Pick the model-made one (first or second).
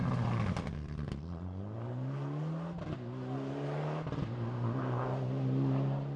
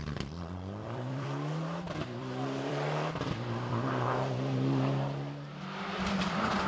second